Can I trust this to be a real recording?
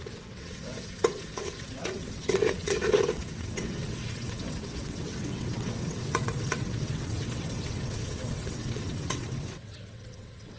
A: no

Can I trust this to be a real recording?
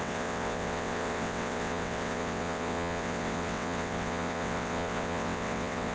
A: no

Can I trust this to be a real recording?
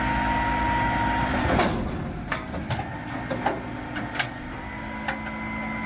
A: yes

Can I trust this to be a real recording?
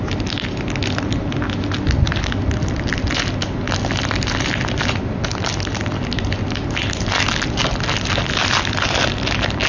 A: yes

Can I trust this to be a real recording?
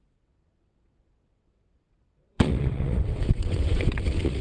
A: no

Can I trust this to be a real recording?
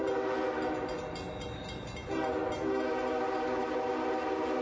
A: yes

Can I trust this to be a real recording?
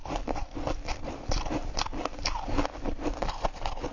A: yes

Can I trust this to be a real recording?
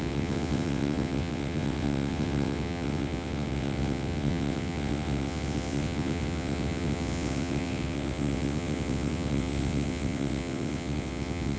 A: no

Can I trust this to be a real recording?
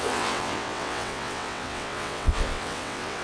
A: no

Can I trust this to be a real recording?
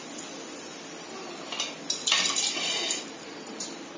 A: yes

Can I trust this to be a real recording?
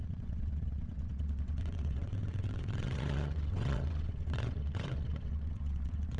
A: no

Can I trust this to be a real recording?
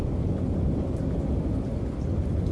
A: yes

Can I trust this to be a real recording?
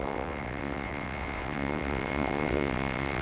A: no